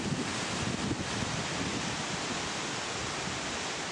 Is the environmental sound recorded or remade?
recorded